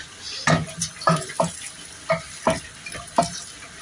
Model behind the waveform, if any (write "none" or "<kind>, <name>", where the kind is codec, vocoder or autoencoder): none